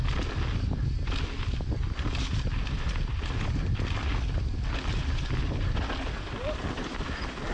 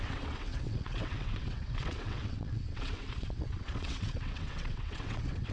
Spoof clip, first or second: second